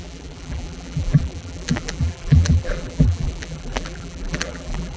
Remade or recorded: remade